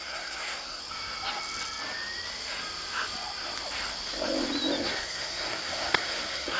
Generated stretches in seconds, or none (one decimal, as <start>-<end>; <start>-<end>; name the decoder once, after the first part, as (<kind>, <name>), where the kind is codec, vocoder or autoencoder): 0.0-0.8 (codec, SNAC); 4.8-6.6